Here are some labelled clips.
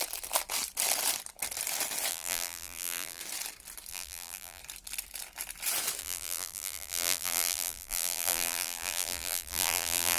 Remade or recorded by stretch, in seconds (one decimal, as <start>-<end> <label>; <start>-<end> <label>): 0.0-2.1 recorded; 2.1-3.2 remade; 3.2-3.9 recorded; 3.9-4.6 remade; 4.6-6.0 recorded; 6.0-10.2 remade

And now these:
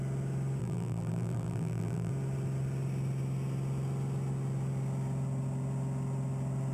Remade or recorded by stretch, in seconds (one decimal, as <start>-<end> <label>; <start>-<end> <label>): 0.0-0.6 recorded; 0.6-2.1 remade; 2.1-6.7 recorded

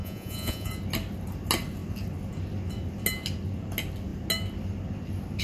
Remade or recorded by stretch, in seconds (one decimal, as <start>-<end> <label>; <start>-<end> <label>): 0.0-0.7 remade; 0.7-5.4 recorded